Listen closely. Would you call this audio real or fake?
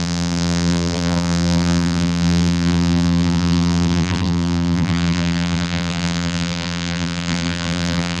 fake